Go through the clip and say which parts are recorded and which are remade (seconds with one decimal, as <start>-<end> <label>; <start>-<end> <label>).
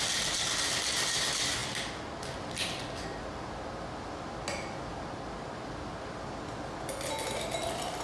0.0-8.0 recorded